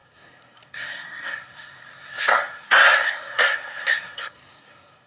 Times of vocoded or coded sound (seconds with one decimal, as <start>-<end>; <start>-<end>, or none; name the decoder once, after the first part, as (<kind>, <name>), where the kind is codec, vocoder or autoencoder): 0.0-5.1 (codec, SNAC)